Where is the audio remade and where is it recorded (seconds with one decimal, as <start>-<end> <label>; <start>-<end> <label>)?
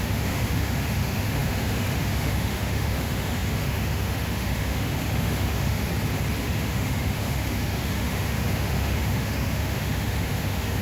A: 0.0-5.9 remade; 5.9-6.4 recorded; 6.4-10.8 remade